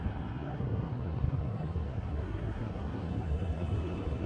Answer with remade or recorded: remade